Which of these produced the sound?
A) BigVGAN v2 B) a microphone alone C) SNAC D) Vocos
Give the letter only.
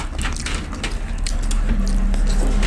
B